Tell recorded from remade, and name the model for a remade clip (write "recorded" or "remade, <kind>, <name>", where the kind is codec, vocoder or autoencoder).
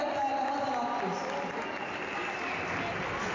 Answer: recorded